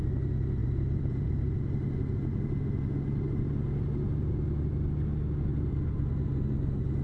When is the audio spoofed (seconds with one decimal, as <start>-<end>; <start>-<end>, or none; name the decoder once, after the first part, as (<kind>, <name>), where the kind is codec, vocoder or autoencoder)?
0.6-1.3 (vocoder, BigVGAN v2); 5.7-6.3